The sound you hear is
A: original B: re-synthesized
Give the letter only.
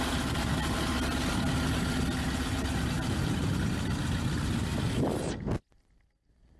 A